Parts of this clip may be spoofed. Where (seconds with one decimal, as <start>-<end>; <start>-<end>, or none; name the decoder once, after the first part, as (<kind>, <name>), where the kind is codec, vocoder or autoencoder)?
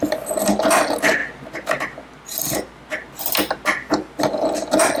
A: none